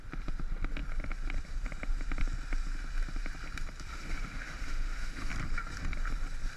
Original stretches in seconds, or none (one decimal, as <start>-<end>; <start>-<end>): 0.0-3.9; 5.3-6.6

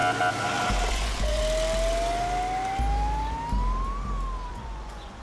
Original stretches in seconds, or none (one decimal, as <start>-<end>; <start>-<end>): 0.0-0.9; 1.4-4.5

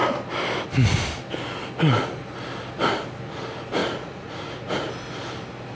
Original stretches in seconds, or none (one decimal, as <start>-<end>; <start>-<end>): 0.0-3.8; 4.9-5.7